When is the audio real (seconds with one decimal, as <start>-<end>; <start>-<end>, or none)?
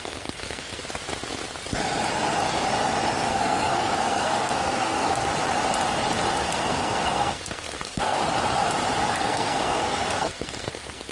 0.8-3.3; 5.3-6.3; 8.2-9.1